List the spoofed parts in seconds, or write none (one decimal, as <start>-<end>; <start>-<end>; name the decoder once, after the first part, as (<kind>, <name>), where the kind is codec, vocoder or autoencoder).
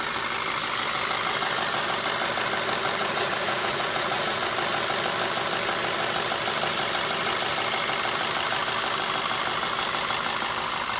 3.0-4.4 (vocoder, Vocos)